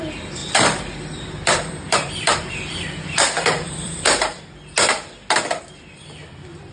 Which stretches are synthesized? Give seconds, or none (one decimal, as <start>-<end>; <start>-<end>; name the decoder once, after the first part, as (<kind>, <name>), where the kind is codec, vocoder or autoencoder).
0.4-4.4 (vocoder, BigVGAN v2)

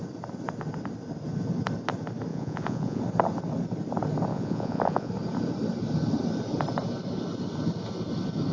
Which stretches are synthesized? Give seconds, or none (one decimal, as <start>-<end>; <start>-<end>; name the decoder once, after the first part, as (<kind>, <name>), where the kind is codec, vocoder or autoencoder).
2.3-3.0 (vocoder, Vocos); 4.3-5.1

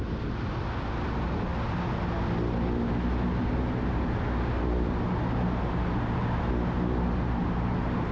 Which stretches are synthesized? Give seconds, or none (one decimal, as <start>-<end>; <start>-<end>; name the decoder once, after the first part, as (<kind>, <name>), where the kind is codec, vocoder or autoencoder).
none